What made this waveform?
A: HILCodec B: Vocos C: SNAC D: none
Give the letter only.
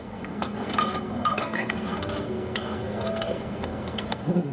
C